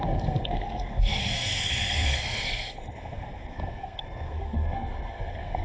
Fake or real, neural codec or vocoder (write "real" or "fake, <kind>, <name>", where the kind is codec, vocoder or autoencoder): fake, codec, SNAC